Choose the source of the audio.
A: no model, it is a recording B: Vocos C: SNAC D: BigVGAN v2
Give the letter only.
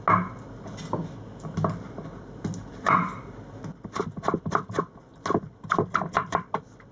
A